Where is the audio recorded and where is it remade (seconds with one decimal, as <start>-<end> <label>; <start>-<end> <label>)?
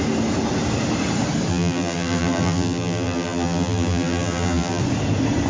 0.0-1.5 recorded; 1.5-4.8 remade; 4.8-5.5 recorded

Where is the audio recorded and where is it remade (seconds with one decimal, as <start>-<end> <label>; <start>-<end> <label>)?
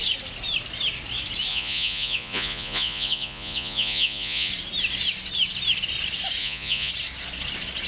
0.0-1.5 recorded; 1.5-4.5 remade; 4.5-6.4 recorded; 6.4-6.9 remade; 6.9-7.9 recorded